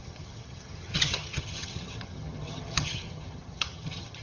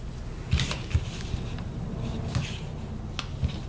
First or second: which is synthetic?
first